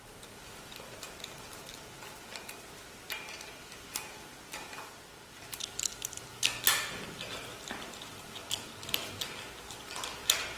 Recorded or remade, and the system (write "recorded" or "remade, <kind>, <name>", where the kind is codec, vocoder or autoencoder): recorded